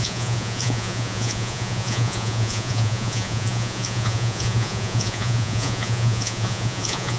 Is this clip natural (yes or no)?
no